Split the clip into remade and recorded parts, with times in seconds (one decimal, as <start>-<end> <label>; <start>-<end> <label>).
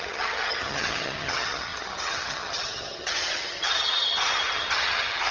0.0-5.3 remade